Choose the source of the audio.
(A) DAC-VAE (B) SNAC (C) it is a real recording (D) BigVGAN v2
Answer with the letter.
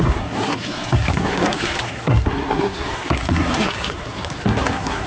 B